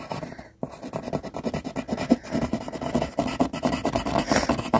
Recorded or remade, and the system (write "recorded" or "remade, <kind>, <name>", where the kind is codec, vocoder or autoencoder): recorded